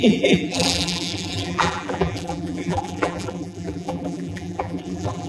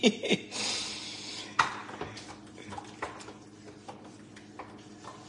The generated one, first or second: first